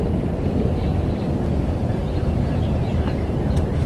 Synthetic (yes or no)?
no